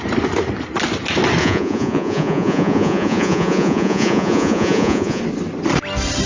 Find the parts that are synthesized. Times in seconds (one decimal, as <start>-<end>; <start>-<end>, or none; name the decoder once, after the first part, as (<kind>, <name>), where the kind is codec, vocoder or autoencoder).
1.4-5.2 (vocoder, Vocos)